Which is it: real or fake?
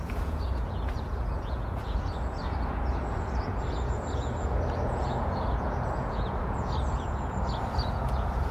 fake